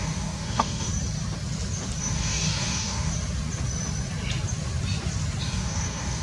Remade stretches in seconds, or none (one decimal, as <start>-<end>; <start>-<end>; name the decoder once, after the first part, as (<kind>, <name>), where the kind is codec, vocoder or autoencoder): 0.0-0.9 (codec, DAC); 2.0-3.1; 5.4-6.2